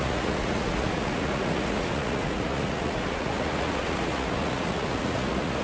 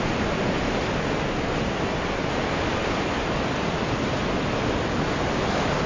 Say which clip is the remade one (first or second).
first